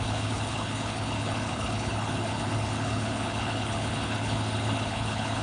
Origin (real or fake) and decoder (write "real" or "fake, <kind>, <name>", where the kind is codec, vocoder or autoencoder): fake, codec, HILCodec